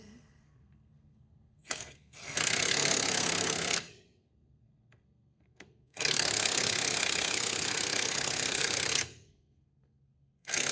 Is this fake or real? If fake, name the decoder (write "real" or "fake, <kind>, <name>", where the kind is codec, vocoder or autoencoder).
fake, codec, SNAC